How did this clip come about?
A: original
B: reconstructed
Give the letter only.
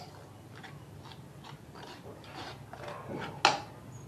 A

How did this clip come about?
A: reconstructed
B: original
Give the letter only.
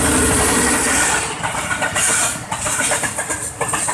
B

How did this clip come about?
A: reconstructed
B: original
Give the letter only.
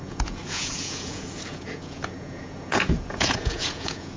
A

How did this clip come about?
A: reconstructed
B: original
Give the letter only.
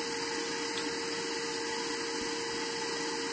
B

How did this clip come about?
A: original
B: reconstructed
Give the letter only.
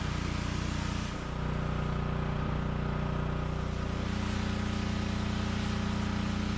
A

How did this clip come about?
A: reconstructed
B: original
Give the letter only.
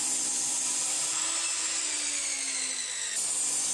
B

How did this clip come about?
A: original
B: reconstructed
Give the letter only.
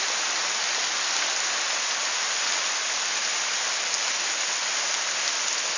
A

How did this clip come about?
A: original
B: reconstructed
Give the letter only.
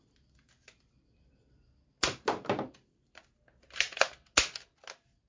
A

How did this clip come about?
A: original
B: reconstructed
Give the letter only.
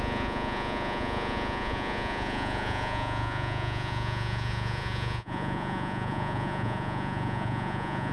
B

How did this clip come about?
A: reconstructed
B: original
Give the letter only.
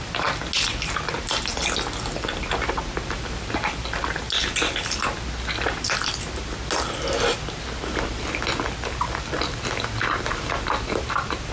B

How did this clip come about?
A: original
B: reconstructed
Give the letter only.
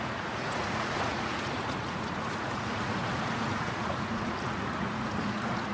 B